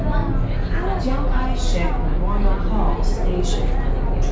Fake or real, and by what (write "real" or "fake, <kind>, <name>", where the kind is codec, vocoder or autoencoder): real